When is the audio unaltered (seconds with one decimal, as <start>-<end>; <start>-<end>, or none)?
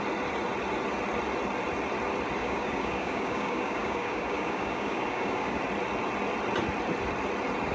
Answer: 0.0-2.4; 5.6-7.7